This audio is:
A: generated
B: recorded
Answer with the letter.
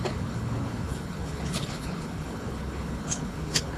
A